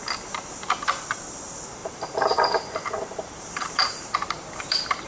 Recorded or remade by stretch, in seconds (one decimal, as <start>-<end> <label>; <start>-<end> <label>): 0.0-1.8 recorded; 1.8-5.1 remade